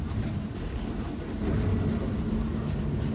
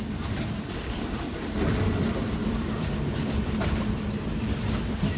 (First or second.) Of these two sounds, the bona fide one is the first